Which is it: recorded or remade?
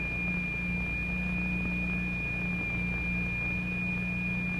recorded